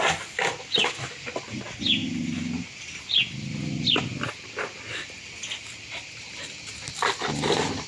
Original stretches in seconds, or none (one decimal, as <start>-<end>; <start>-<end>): 0.0-7.9